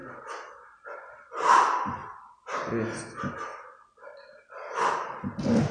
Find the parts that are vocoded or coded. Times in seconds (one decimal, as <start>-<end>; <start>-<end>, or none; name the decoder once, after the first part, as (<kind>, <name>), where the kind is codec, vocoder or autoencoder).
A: 0.0-1.0 (vocoder, BigVGAN v2); 2.0-2.6